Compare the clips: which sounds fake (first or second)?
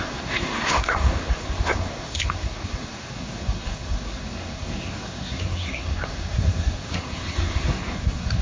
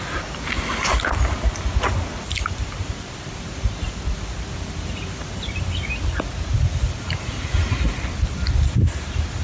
first